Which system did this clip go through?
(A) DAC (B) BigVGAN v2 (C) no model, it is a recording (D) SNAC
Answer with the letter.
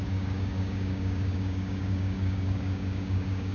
A